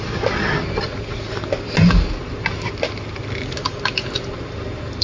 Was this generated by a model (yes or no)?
no